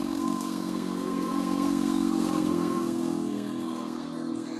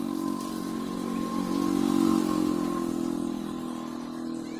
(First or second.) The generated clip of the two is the first